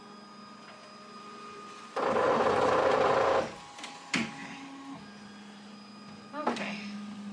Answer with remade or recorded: recorded